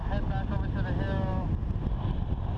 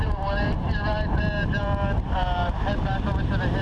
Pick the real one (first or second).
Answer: first